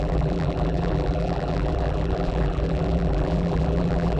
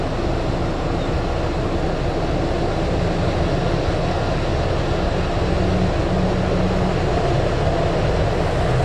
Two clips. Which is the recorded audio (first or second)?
second